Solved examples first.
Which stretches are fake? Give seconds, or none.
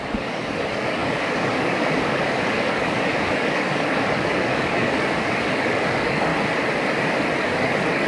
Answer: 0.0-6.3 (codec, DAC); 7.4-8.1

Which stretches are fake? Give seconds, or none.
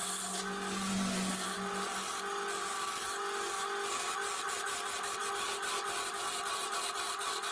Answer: none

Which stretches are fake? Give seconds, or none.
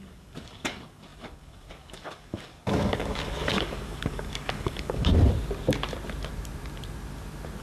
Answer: 0.0-5.1 (codec, DAC)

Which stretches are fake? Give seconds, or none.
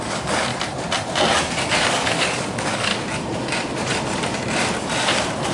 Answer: 0.0-0.5 (codec, DAC); 1.8-2.9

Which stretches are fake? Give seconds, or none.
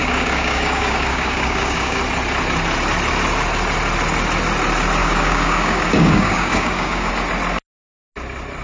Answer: 0.0-2.0 (codec, DAC); 5.0-7.1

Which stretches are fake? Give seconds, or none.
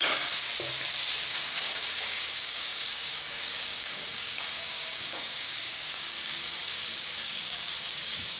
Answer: 0.0-0.5 (codec, DAC); 1.3-8.4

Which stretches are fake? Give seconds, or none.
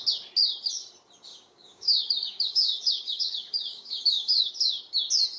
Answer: 1.3-4.5 (codec, DAC)